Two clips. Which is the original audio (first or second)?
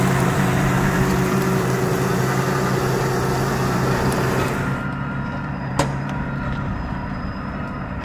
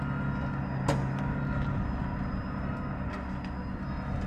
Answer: second